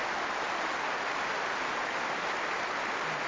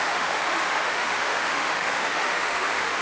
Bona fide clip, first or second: first